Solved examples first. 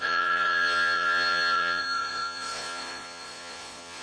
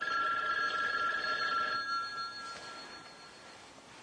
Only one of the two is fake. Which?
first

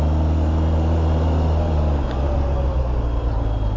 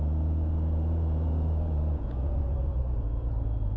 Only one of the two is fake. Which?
second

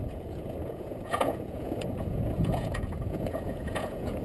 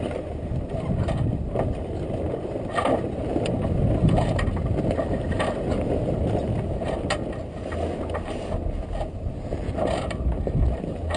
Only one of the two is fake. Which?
first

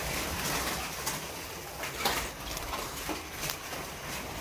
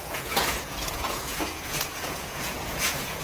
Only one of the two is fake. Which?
second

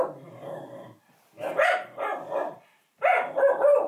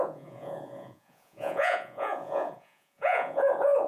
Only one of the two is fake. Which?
second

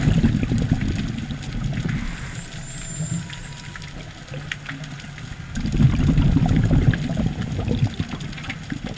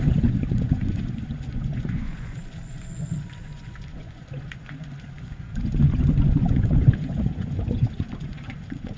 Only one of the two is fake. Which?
second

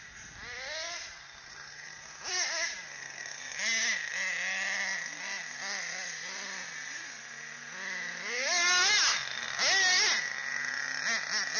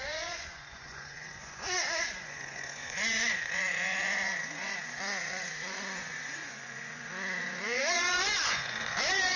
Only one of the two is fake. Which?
second